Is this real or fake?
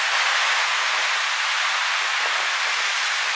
real